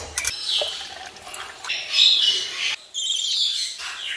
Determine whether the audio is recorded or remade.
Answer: recorded